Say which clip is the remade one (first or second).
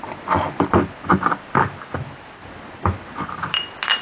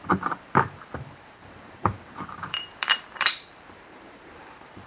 second